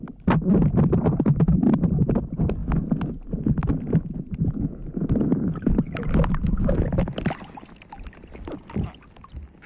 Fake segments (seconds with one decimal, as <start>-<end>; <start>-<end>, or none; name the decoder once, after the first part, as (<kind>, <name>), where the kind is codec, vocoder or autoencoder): 0.0-2.6 (vocoder, BigVGAN v2); 4.2-4.8; 8.3-9.7